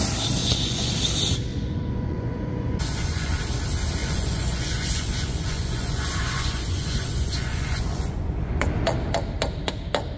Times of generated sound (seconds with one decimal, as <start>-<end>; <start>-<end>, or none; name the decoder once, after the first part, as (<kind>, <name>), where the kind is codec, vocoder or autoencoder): 0.4-0.9 (vocoder, Vocos); 1.5-3.4; 4.0-8.7